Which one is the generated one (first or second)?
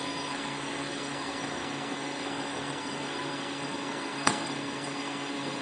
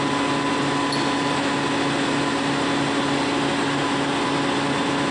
first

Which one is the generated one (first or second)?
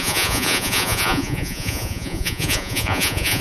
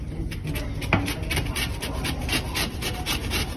first